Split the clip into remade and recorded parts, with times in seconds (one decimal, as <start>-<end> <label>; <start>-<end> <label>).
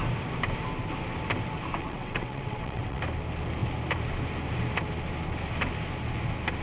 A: 0.0-1.8 recorded; 1.8-3.0 remade; 3.0-6.6 recorded